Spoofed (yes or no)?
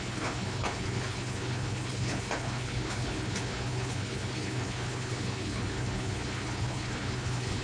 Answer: yes